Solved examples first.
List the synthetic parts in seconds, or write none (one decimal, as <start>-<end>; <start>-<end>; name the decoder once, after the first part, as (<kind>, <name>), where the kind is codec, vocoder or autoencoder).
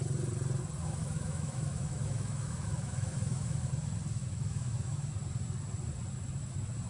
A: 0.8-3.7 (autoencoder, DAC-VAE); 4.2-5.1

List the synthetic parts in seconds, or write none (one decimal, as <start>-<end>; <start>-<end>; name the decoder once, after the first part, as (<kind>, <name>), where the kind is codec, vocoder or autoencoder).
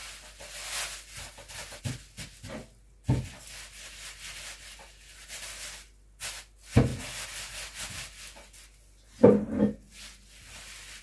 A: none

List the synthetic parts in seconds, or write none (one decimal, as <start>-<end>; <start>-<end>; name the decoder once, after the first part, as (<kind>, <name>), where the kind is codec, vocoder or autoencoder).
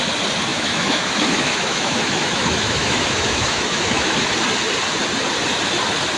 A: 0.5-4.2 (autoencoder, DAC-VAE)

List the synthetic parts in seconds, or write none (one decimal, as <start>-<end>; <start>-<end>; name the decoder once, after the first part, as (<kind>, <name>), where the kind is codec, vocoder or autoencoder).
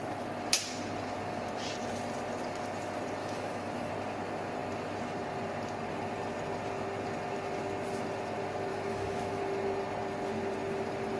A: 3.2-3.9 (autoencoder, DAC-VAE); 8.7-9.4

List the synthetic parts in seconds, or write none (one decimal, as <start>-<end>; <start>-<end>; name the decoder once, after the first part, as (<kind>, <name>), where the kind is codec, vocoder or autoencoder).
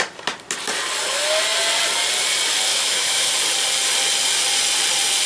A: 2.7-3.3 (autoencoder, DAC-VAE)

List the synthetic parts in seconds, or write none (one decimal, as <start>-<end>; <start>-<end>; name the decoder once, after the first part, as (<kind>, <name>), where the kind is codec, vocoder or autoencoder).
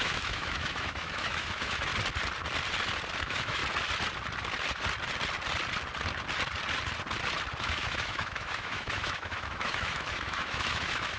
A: 0.0-1.9 (autoencoder, DAC-VAE); 3.2-3.6; 7.6-11.2